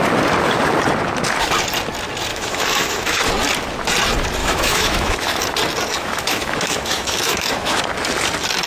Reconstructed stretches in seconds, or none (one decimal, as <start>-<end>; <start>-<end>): 2.3-3.3; 4.4-5.4; 6.0-7.8